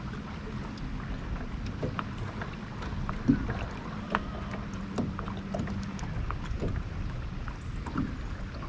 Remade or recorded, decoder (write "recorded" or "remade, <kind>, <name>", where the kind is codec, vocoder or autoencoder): recorded